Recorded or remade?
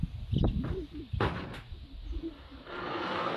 recorded